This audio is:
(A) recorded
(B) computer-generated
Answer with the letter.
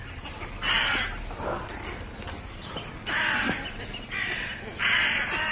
A